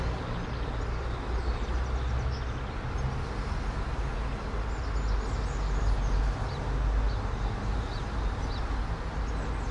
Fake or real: real